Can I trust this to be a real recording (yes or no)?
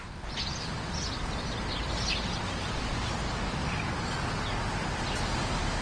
yes